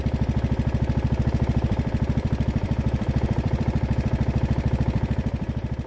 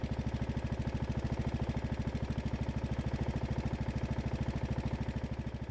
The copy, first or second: first